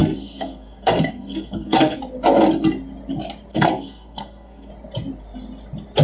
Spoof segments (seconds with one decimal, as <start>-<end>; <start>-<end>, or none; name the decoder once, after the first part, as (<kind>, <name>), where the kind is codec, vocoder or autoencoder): 0.0-2.0 (codec, SNAC); 3.5-4.7